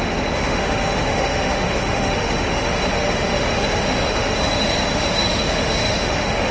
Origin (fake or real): fake